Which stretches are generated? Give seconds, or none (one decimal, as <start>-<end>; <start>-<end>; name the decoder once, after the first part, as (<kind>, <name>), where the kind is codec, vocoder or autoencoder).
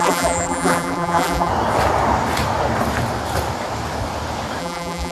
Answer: 0.0-1.5 (vocoder, BigVGAN v2); 4.6-5.1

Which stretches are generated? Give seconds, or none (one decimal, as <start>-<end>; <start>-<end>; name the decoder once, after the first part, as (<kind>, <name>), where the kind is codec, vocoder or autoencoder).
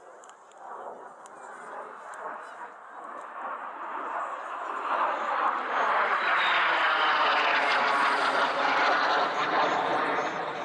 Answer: none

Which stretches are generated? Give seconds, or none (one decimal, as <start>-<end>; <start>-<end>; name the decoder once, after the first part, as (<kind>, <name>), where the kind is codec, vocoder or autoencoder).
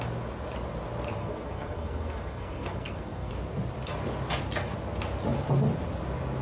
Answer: 1.2-3.3 (codec, SNAC)